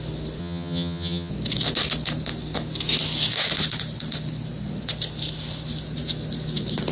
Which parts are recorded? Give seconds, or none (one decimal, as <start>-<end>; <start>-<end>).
0.0-0.4; 1.3-6.9